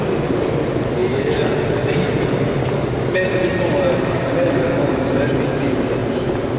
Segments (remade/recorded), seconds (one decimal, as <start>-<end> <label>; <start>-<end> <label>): 0.0-6.6 recorded